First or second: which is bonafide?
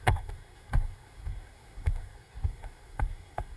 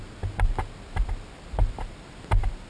second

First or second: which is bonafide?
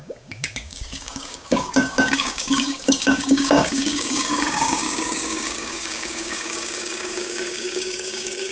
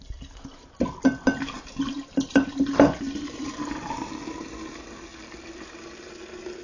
second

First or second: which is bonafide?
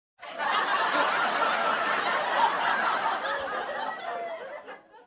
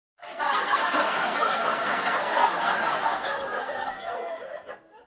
first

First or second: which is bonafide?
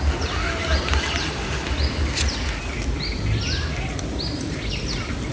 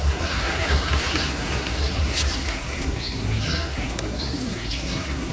first